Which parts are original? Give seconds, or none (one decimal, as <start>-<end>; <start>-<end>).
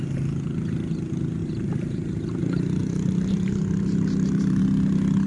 0.0-1.4; 2.4-2.8; 4.6-5.3